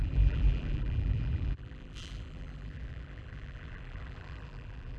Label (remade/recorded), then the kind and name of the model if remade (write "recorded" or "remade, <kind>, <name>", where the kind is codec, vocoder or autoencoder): remade, vocoder, BigVGAN v2